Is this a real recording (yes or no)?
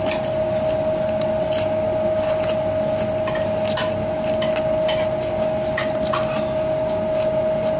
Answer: yes